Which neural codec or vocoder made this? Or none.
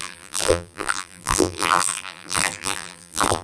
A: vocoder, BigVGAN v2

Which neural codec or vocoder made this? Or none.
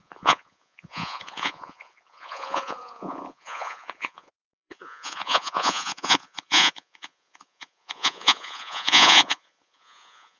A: vocoder, Vocos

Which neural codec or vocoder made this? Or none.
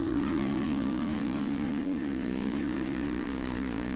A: vocoder, Vocos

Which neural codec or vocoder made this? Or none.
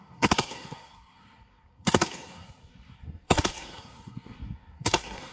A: codec, SNAC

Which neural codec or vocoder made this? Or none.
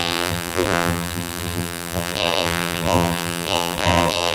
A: vocoder, BigVGAN v2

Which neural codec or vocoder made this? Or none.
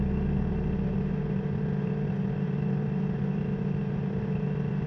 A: none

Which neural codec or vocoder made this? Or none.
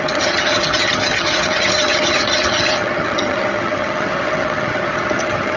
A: vocoder, HiFi-GAN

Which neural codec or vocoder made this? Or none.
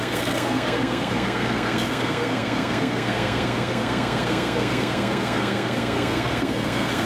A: codec, SNAC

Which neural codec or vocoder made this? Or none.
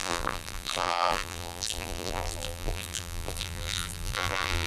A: vocoder, BigVGAN v2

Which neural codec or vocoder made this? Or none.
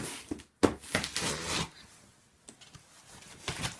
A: none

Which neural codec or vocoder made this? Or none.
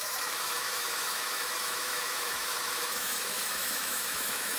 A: autoencoder, DAC-VAE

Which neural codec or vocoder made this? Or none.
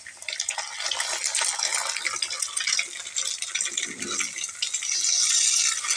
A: none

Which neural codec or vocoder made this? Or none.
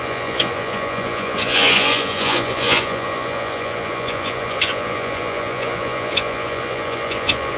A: vocoder, Vocos